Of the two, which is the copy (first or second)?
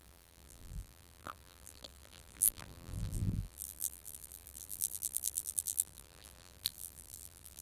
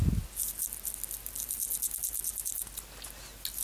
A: first